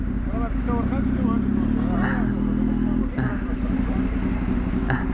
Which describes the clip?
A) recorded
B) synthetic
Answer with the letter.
A